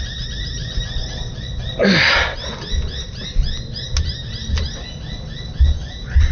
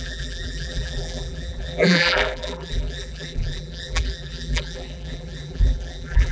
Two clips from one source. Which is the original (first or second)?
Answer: first